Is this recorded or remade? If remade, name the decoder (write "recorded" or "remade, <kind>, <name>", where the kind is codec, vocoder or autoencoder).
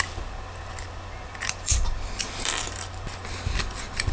remade, vocoder, BigVGAN v2